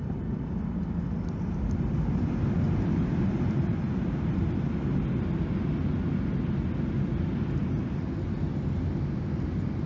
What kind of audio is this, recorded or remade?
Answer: recorded